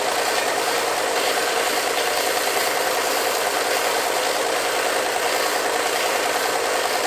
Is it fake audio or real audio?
real